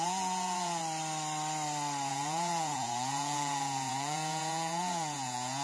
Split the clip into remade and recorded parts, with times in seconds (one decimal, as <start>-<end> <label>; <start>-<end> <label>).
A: 0.0-0.8 remade; 0.8-2.1 recorded; 2.1-5.6 remade